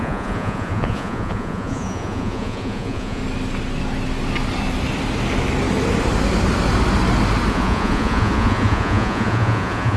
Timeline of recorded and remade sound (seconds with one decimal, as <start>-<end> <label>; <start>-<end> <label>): 0.0-3.2 remade; 3.2-7.5 recorded; 7.5-10.0 remade